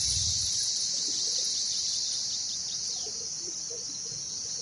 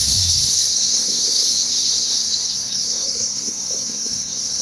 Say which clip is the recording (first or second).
first